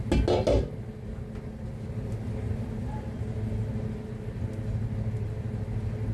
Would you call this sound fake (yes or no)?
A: no